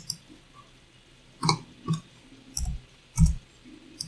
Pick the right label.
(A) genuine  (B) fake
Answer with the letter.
A